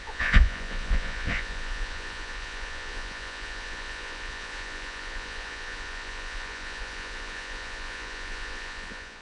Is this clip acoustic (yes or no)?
no